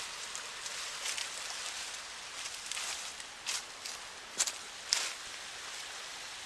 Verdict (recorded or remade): recorded